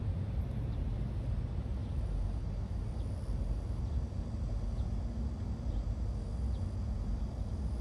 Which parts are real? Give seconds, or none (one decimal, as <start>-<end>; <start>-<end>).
0.0-7.8